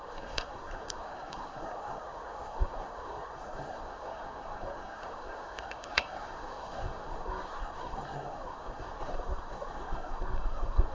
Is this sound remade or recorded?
remade